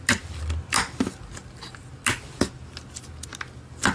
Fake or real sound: real